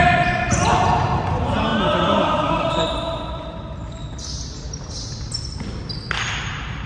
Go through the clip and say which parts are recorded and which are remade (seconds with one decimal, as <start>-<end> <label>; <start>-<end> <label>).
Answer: 0.0-4.0 remade; 4.0-6.4 recorded; 6.4-6.9 remade